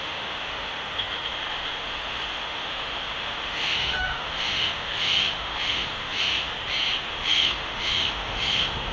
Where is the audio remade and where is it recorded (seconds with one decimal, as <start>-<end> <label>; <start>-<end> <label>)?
0.0-6.5 remade; 6.5-7.1 recorded; 7.1-8.9 remade